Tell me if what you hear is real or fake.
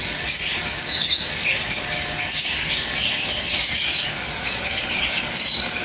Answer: fake